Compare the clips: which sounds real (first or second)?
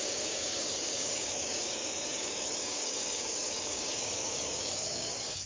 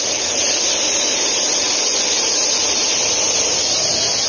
second